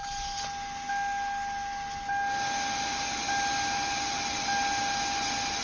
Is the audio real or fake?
real